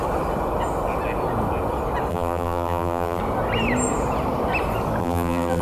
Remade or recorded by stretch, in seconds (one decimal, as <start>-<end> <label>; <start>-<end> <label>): 0.0-2.1 recorded; 2.1-3.2 remade; 3.2-5.0 recorded; 5.0-5.6 remade